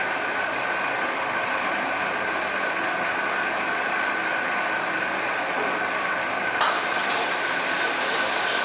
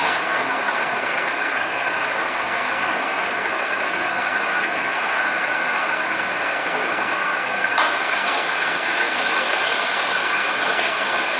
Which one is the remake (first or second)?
second